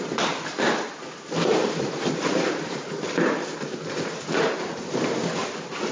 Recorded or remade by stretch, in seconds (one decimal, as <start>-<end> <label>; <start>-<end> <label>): 0.0-0.9 recorded; 0.9-4.4 remade; 4.4-5.9 recorded